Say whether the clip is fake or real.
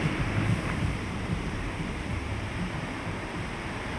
fake